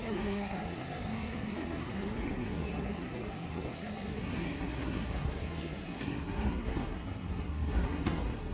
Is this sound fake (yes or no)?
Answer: yes